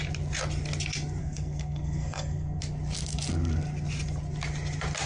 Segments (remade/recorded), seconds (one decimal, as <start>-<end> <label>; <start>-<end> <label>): 0.0-1.2 recorded; 1.2-2.6 remade; 2.6-5.1 recorded